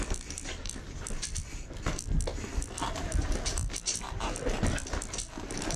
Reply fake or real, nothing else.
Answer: real